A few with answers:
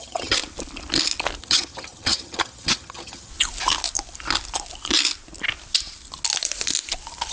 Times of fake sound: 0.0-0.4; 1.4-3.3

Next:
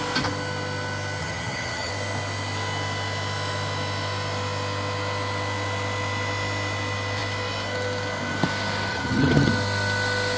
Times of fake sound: 1.2-1.9; 8.9-9.5

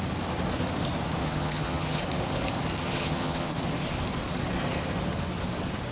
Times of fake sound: 1.2-2.0; 2.8-3.5

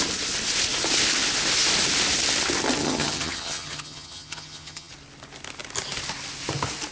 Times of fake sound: 2.8-4.9

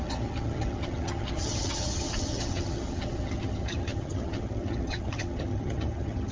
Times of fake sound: 0.0-6.3

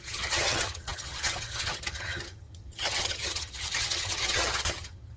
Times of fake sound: 0.0-5.2